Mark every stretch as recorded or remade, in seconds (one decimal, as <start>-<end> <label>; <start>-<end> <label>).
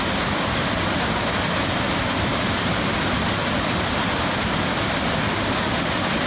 0.0-2.3 recorded; 2.3-3.1 remade; 3.1-6.3 recorded